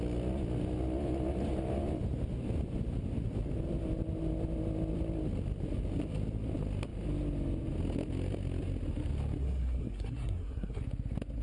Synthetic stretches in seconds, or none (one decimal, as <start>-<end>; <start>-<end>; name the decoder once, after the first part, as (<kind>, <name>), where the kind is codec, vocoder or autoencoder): 9.4-10.8 (codec, SNAC)